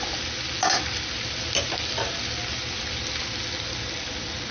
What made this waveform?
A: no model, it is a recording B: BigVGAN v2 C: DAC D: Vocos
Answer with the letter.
A